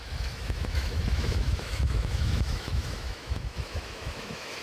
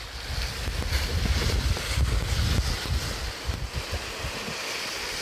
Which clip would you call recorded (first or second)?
second